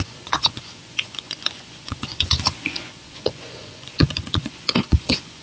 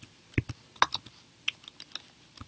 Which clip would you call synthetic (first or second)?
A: first